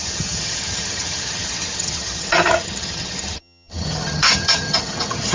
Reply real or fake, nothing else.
fake